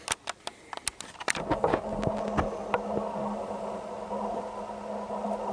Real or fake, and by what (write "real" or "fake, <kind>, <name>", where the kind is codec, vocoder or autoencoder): real